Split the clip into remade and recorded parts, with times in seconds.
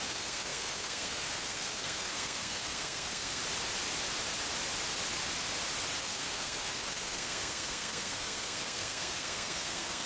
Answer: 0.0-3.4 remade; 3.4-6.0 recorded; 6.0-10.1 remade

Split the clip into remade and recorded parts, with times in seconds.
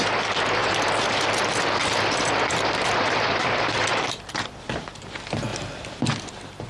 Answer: 0.0-0.6 recorded; 0.6-4.6 remade; 4.6-5.5 recorded; 5.5-6.3 remade; 6.3-6.7 recorded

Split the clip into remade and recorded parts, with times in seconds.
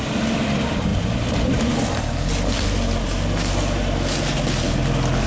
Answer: 0.0-5.3 recorded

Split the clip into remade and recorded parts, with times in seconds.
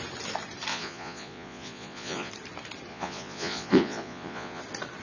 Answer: 0.0-0.7 recorded; 0.7-2.3 remade; 2.3-2.9 recorded; 2.9-4.6 remade; 4.6-5.0 recorded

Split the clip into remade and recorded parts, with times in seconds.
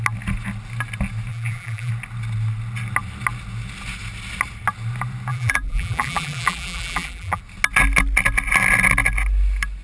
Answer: 0.0-1.3 recorded; 1.3-1.9 remade; 1.9-5.3 recorded; 5.3-7.4 remade; 7.4-9.8 recorded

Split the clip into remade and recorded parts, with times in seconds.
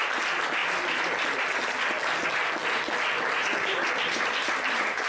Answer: 0.0-5.1 recorded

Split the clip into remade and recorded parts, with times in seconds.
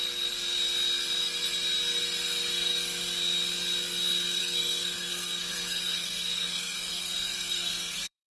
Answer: 0.0-4.4 recorded; 4.4-8.4 remade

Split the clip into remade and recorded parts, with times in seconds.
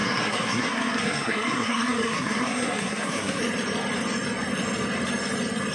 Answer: 0.0-3.4 remade; 3.4-5.7 recorded